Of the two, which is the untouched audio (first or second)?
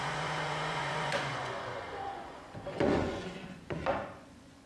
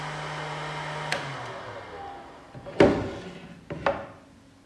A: second